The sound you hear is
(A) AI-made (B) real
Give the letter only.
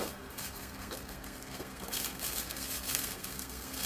A